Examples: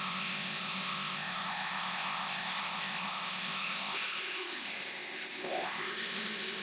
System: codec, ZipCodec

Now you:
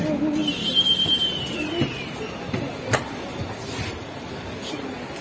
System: none